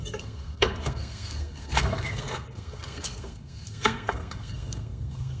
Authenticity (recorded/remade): remade